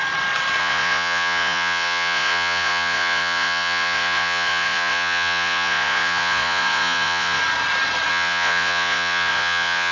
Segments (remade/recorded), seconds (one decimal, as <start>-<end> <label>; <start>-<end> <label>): 0.0-0.6 recorded; 0.6-7.4 remade; 7.4-8.1 recorded; 8.1-9.9 remade